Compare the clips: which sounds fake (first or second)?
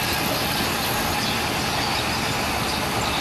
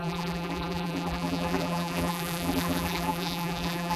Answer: second